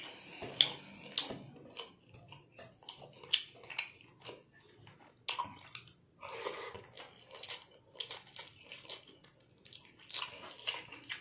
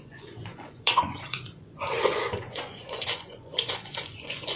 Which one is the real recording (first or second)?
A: first